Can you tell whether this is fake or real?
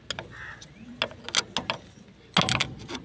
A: real